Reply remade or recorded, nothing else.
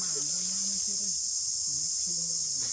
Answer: recorded